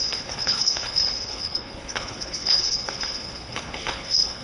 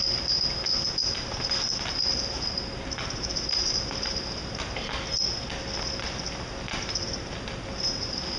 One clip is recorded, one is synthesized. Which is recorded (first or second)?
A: second